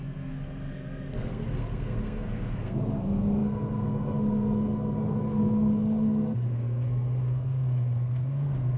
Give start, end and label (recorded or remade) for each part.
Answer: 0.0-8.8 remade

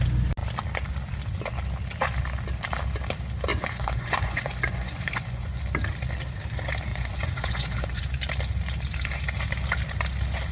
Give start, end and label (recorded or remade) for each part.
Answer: 0.0-3.5 recorded; 3.5-5.6 remade; 5.6-6.9 recorded; 6.9-8.0 remade; 8.0-10.5 recorded